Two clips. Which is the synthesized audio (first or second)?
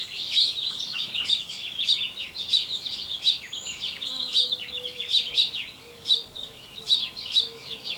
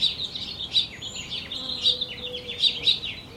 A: first